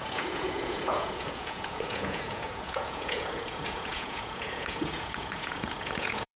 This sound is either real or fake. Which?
fake